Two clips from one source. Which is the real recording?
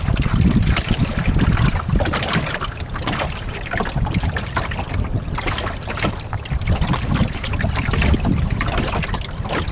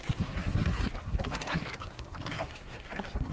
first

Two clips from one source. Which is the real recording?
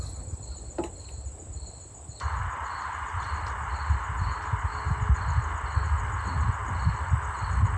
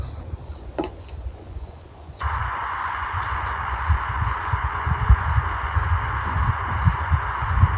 first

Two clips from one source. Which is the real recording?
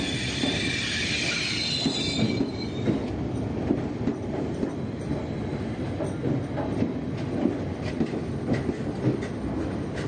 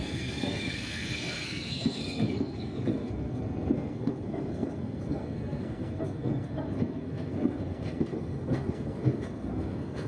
first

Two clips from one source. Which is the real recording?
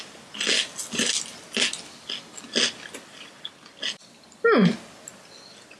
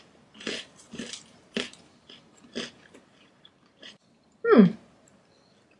first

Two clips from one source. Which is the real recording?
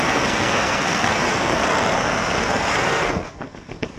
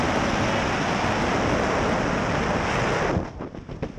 second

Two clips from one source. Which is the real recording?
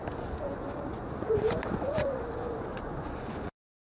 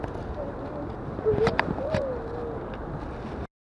second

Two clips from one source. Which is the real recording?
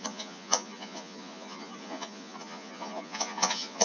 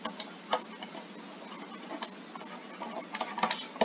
second